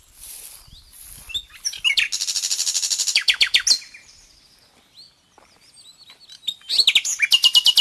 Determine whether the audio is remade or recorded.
recorded